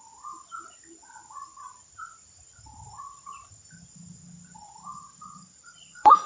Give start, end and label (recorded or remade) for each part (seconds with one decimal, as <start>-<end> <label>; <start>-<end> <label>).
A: 0.0-4.9 recorded; 4.9-6.3 remade

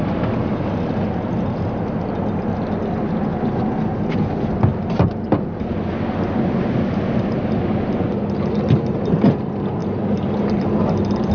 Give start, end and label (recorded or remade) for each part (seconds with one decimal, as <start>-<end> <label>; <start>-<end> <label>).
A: 0.0-11.3 recorded